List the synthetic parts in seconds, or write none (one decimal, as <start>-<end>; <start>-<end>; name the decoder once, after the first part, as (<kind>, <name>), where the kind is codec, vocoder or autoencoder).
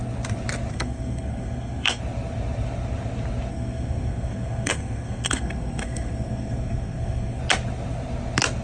0.7-2.0 (codec, SNAC); 3.5-7.4